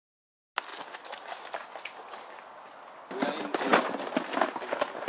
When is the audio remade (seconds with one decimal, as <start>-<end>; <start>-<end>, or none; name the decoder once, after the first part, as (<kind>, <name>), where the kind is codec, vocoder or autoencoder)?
none